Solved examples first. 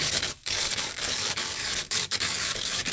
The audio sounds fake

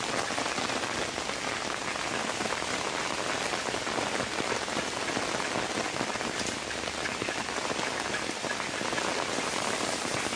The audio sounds real